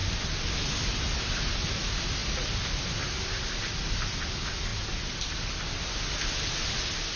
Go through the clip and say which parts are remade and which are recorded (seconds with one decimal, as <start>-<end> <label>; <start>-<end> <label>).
0.0-7.2 recorded